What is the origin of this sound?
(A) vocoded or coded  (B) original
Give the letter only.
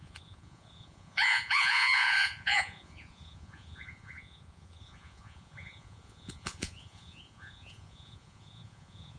A